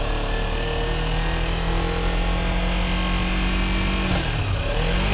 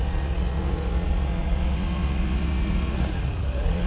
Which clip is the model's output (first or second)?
second